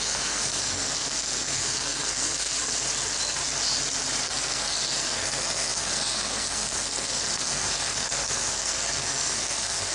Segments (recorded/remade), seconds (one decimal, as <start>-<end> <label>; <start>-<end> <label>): 0.0-2.6 remade; 2.6-4.2 recorded; 4.2-9.9 remade